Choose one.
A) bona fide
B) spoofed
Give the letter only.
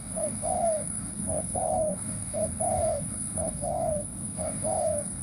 B